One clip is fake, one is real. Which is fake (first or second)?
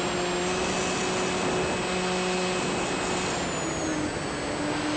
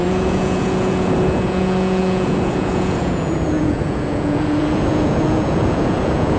second